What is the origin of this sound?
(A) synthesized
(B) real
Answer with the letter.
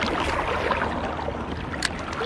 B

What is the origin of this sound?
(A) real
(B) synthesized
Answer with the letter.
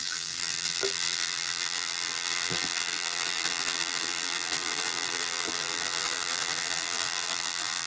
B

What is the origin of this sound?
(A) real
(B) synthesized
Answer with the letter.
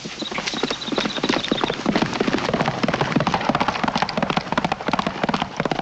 A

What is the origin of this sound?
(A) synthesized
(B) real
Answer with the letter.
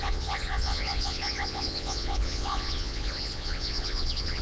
A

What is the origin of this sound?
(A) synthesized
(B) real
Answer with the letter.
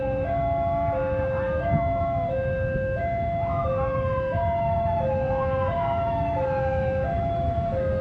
A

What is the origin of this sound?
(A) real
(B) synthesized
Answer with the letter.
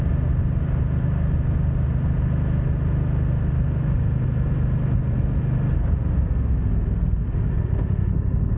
A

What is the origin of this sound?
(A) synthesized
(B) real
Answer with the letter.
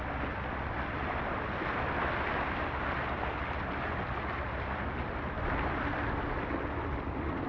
B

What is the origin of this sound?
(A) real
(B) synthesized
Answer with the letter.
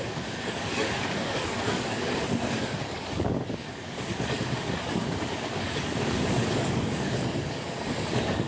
B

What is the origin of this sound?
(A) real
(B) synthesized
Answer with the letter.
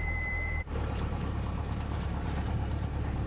B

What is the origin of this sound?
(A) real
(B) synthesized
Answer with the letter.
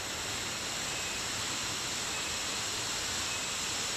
A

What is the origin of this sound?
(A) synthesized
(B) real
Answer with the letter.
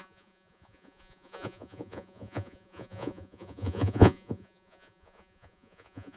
A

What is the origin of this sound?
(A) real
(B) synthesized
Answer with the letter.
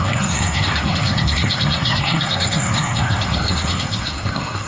B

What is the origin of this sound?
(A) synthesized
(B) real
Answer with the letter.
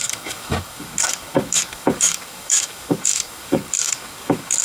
A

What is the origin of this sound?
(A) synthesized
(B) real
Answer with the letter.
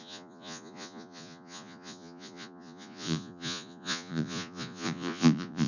A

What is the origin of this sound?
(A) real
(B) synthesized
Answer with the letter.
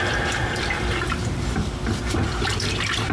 B